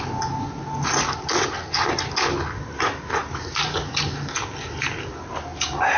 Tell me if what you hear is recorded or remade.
recorded